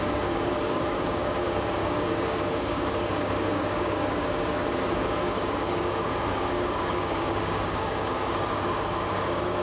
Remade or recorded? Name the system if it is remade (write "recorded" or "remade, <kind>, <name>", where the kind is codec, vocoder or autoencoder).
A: remade, codec, DAC